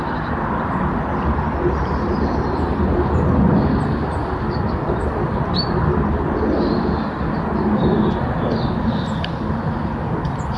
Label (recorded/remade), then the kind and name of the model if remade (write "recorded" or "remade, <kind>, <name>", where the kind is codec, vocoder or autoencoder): recorded